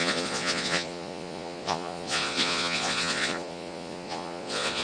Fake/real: fake